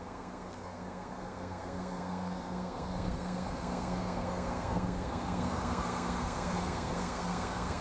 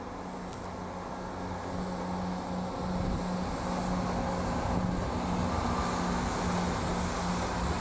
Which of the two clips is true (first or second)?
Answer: second